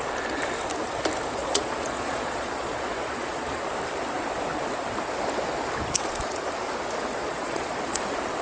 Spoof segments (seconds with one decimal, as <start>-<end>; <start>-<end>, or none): 1.4-3.6; 7.2-8.0